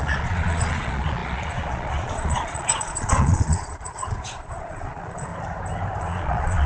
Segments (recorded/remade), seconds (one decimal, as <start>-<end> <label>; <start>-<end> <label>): 0.0-5.3 remade; 5.3-6.0 recorded; 6.0-6.7 remade

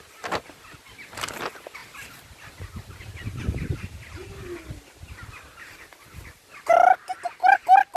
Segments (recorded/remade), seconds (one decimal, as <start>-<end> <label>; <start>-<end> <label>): 0.0-8.0 recorded

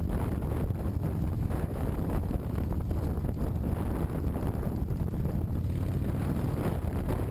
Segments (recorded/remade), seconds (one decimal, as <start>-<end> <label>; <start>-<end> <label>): 0.0-1.3 recorded; 1.3-2.8 remade; 2.8-7.3 recorded

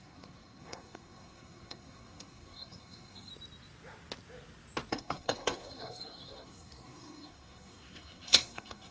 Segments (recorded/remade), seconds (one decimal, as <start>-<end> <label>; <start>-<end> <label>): 0.0-3.3 remade; 3.3-4.9 recorded; 4.9-8.9 remade